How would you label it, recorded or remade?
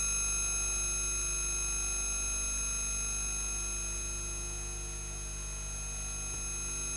recorded